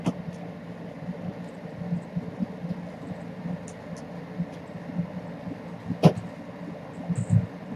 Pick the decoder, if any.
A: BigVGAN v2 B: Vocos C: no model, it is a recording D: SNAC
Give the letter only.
C